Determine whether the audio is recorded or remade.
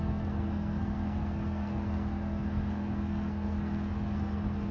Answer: remade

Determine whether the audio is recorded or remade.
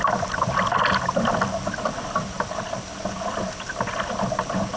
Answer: recorded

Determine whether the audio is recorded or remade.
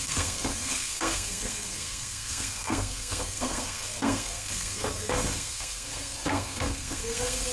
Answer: remade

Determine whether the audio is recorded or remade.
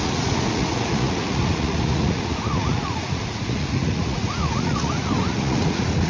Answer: remade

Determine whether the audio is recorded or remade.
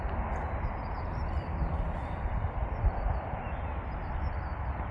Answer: recorded